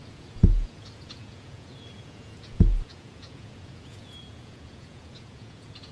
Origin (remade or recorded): remade